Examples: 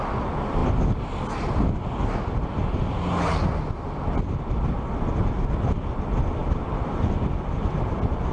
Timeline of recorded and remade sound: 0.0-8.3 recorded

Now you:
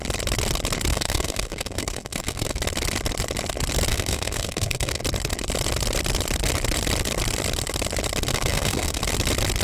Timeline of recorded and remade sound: 0.0-0.9 recorded; 0.9-2.6 remade; 2.6-3.9 recorded; 3.9-5.0 remade; 5.0-8.3 recorded; 8.3-9.0 remade; 9.0-9.6 recorded